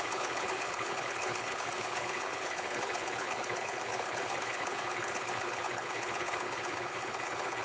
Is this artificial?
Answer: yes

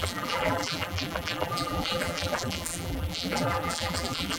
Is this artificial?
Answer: yes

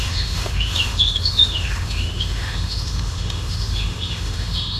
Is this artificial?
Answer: yes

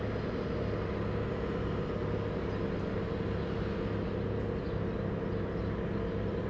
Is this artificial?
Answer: no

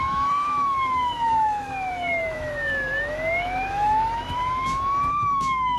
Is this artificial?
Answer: yes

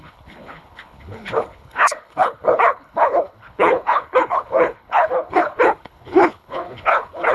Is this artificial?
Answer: yes